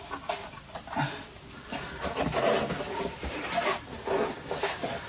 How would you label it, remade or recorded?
recorded